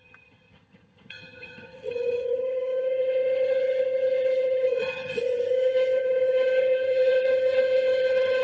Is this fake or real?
fake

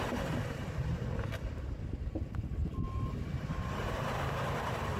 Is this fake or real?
real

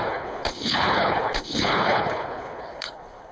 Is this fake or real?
fake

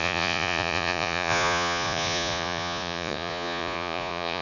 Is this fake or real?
fake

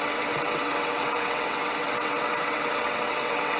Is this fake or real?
fake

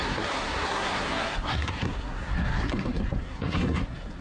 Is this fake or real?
fake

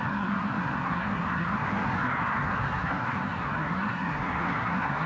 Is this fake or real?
fake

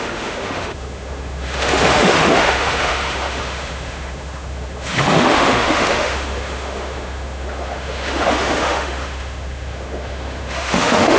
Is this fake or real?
fake